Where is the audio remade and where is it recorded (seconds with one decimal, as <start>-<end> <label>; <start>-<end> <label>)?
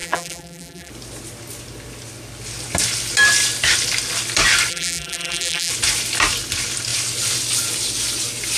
0.0-0.9 remade; 0.9-4.7 recorded; 4.7-5.7 remade; 5.7-8.6 recorded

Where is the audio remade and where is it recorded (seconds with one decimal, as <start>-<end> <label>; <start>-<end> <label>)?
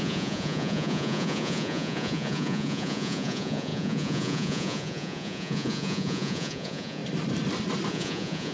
0.0-7.0 remade; 7.0-7.9 recorded; 7.9-8.5 remade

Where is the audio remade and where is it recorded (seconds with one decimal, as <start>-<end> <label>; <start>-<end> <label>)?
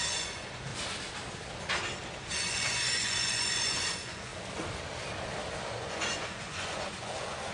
0.0-0.7 remade; 0.7-2.1 recorded; 2.1-4.3 remade; 4.3-5.7 recorded; 5.7-7.5 remade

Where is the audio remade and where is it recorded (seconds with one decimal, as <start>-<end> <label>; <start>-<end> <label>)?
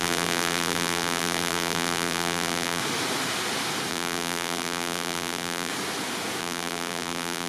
0.0-2.8 remade; 2.8-3.9 recorded; 3.9-5.7 remade; 5.7-6.4 recorded; 6.4-7.5 remade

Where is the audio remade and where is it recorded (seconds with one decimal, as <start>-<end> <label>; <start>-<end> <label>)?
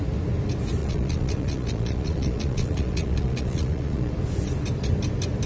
0.0-0.8 recorded; 0.8-4.1 remade; 4.1-5.5 recorded